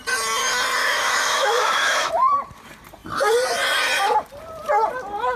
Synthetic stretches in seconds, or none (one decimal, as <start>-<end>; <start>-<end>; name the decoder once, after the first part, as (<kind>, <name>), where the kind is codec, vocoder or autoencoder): 0.8-2.1 (autoencoder, DAC-VAE)